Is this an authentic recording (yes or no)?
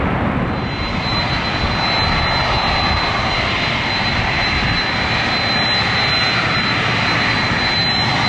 yes